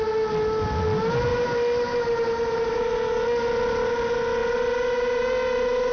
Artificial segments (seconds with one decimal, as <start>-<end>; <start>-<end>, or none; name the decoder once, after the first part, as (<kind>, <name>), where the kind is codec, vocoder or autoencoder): 1.3-2.9 (vocoder, BigVGAN v2); 4.4-5.9